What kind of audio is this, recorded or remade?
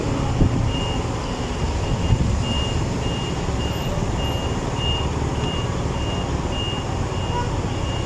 recorded